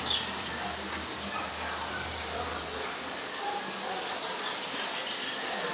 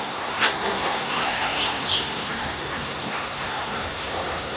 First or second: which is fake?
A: second